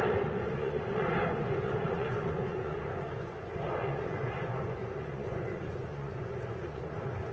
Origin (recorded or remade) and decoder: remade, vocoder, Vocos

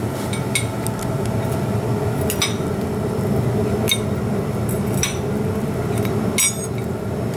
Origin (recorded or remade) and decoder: recorded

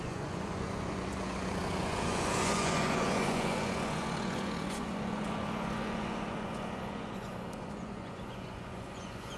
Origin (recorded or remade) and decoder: remade, vocoder, Vocos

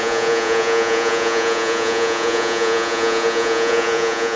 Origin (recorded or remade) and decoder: remade, vocoder, Vocos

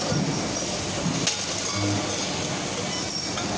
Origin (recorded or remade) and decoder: recorded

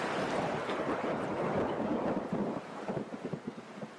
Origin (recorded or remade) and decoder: recorded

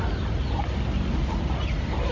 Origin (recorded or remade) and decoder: recorded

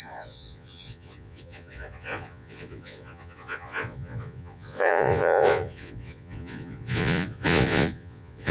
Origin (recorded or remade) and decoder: remade, vocoder, Vocos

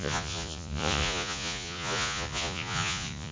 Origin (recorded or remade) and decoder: remade, vocoder, Vocos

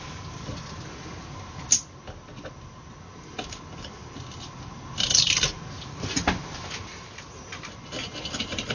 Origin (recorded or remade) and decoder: recorded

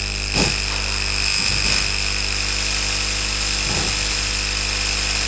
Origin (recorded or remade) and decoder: recorded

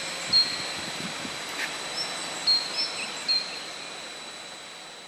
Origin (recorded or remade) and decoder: recorded